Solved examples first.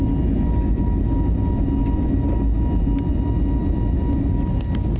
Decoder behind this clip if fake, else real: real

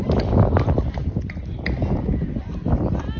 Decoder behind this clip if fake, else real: real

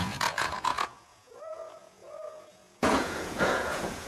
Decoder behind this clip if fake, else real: fake, vocoder, Vocos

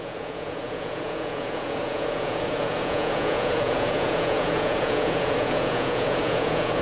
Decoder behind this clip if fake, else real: fake, vocoder, Vocos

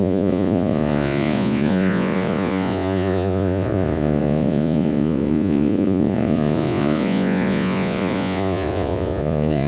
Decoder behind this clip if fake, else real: fake, vocoder, Vocos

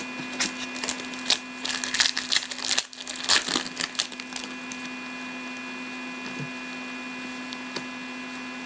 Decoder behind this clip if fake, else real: real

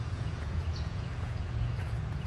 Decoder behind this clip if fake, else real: fake, vocoder, Vocos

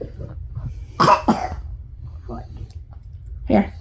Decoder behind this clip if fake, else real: real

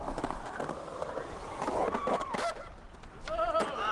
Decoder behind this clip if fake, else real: real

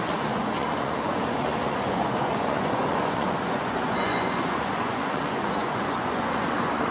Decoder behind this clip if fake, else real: fake, vocoder, Vocos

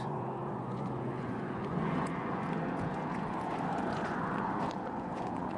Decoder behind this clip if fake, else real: fake, vocoder, Vocos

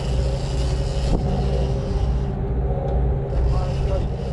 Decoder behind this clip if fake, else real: real